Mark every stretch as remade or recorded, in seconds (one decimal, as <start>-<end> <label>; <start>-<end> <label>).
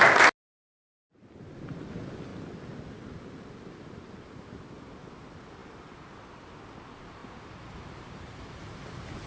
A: 0.0-5.6 recorded; 5.6-6.1 remade; 6.1-7.2 recorded; 7.2-9.3 remade